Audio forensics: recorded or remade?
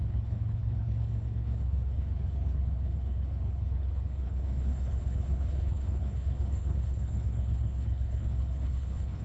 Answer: remade